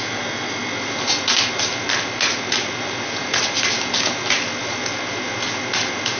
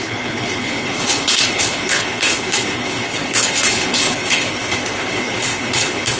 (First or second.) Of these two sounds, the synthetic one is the second